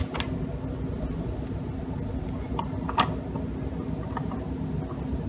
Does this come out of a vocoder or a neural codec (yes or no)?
no